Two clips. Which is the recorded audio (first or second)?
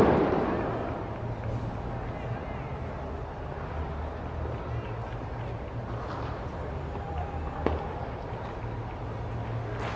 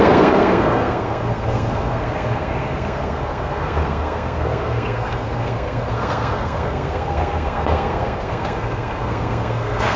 first